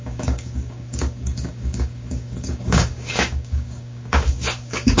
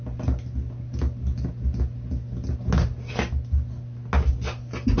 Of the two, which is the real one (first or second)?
second